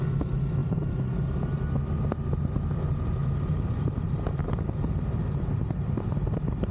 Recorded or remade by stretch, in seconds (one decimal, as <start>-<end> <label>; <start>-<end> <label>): 0.0-0.6 recorded; 0.6-1.5 remade; 1.5-3.2 recorded; 3.2-4.4 remade; 4.4-6.7 recorded